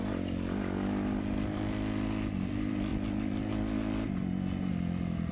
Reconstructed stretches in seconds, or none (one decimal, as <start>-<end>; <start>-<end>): none